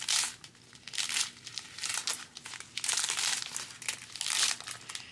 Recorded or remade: recorded